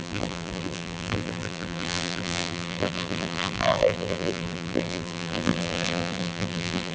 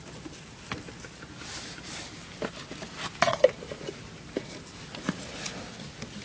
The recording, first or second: second